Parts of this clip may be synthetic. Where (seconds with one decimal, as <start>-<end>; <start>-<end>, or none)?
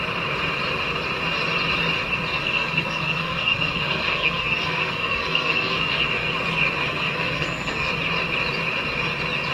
2.3-6.3; 6.8-7.9